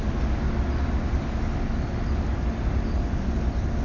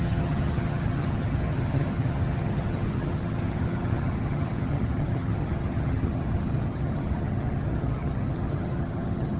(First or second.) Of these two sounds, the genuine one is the first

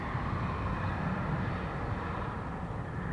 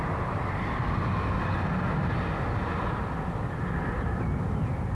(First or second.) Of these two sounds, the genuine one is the second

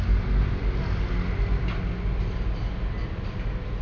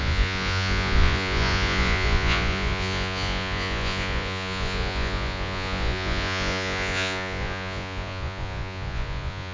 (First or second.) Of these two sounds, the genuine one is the first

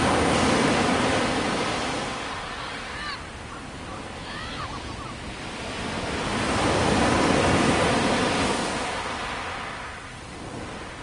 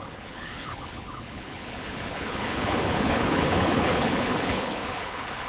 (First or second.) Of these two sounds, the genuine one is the first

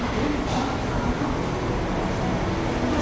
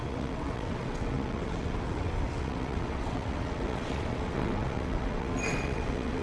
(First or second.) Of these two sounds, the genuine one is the first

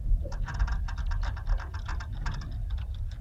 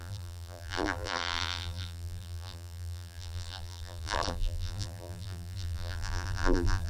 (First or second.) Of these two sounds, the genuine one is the first